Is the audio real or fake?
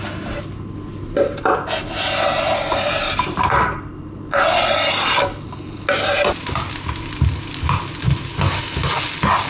real